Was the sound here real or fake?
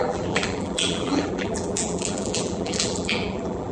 fake